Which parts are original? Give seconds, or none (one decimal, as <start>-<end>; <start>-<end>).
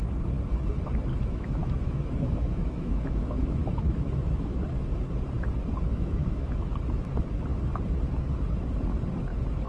0.0-1.1; 4.6-5.9; 6.7-9.7